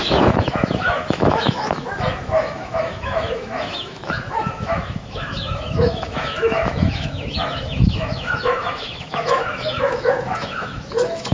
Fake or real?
fake